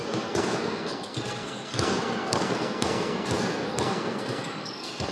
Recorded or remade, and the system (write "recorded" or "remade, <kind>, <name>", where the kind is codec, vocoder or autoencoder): remade, codec, SNAC